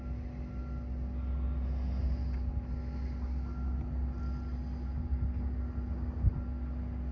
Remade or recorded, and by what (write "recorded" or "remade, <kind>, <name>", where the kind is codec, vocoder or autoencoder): recorded